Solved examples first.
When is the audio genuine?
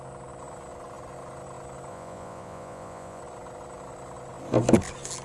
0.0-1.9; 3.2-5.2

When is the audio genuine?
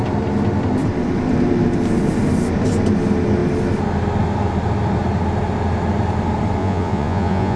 0.0-6.6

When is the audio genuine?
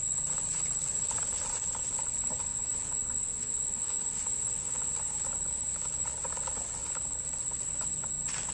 0.0-2.5; 4.9-8.5